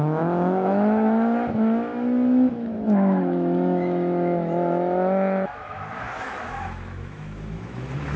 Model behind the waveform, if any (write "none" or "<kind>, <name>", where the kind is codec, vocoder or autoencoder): autoencoder, DAC-VAE